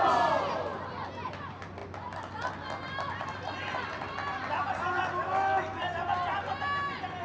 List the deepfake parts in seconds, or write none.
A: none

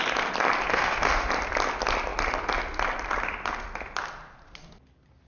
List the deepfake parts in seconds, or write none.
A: 0.7-1.3 (autoencoder, DAC-VAE)

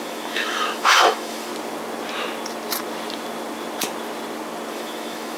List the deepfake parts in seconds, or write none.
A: 0.0-1.5 (autoencoder, DAC-VAE); 4.7-5.4